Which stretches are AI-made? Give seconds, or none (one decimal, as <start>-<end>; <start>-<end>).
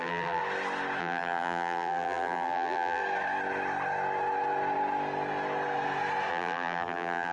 0.0-0.4; 1.0-3.0; 6.3-7.3